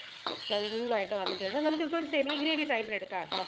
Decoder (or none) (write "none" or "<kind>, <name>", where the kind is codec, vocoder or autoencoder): vocoder, HiFi-GAN